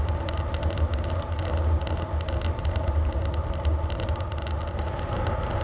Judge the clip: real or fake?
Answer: real